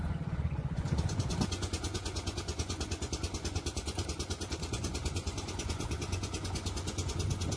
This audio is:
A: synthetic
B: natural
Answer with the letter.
A